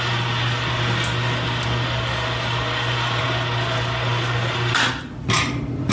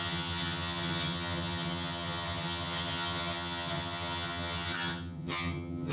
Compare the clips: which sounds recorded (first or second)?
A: first